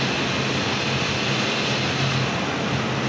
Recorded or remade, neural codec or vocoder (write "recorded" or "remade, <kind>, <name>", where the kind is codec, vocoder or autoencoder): recorded